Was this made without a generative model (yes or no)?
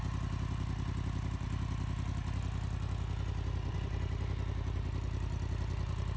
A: yes